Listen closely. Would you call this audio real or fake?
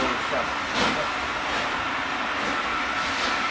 real